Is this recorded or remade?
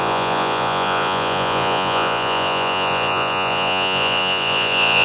remade